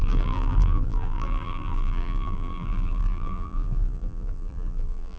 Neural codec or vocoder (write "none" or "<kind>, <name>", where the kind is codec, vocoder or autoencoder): vocoder, BigVGAN v2